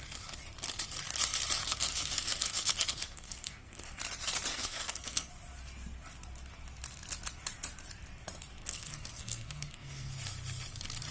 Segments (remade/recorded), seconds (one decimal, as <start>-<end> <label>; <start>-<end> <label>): 0.0-1.6 recorded; 1.6-4.0 remade; 4.0-4.5 recorded; 4.5-5.3 remade; 5.3-8.6 recorded; 8.6-10.1 remade; 10.1-11.1 recorded